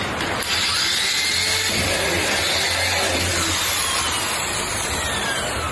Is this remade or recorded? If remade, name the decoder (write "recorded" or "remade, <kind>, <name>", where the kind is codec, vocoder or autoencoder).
recorded